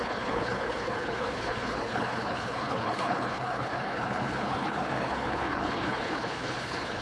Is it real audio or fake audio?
fake